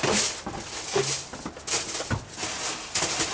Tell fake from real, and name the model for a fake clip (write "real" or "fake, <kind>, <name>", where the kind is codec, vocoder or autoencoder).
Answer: real